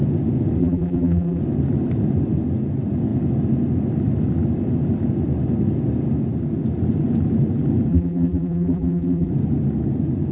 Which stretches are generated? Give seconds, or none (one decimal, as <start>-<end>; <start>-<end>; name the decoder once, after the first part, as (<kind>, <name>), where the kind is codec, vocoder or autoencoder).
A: 0.6-1.4 (vocoder, BigVGAN v2); 7.9-9.3